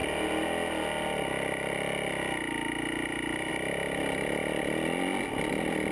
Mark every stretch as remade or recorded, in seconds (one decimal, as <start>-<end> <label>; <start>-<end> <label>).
0.0-5.9 recorded